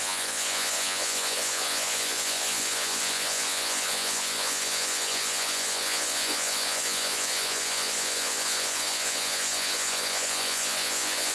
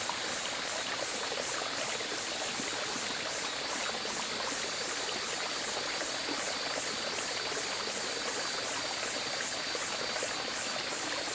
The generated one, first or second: first